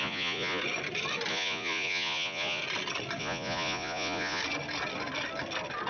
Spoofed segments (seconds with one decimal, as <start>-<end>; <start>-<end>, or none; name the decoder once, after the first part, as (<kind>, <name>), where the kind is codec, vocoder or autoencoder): 0.0-0.6 (vocoder, Vocos); 1.3-2.6; 3.2-4.4